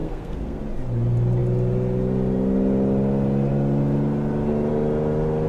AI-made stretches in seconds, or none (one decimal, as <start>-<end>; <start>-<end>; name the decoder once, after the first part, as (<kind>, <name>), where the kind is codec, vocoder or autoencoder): 0.0-0.6 (codec, SNAC)